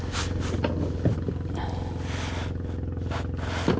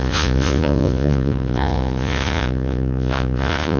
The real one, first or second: first